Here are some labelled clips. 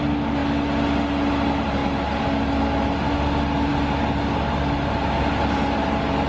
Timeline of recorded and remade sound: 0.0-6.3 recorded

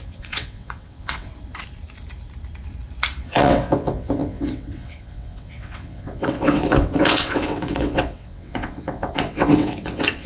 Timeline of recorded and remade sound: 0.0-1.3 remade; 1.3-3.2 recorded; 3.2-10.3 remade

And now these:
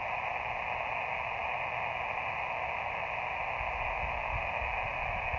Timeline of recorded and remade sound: 0.0-5.4 recorded

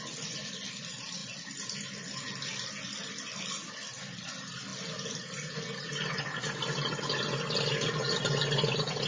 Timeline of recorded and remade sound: 0.0-9.1 recorded

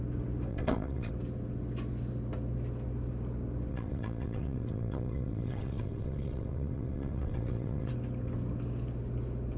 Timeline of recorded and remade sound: 0.0-0.5 recorded; 0.5-1.1 remade; 1.1-3.7 recorded; 3.7-7.9 remade; 7.9-9.6 recorded